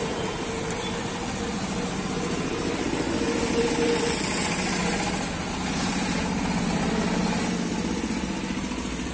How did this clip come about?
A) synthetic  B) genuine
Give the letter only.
B